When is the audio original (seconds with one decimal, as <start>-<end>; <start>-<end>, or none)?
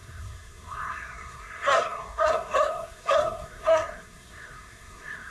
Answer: none